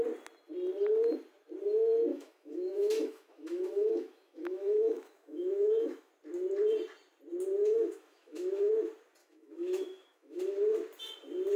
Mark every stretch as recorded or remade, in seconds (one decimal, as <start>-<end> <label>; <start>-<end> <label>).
0.0-2.1 recorded; 2.1-6.1 remade; 6.1-7.6 recorded; 7.6-8.7 remade; 8.7-9.2 recorded; 9.2-10.4 remade; 10.4-11.6 recorded